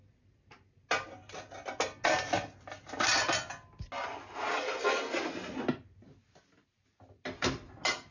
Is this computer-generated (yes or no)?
no